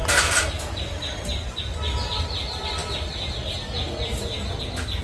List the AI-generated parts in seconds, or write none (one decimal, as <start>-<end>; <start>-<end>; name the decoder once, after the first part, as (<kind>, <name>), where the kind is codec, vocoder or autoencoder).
none